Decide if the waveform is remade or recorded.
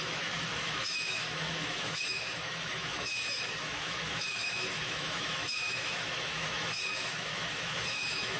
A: remade